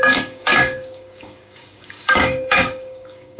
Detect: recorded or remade remade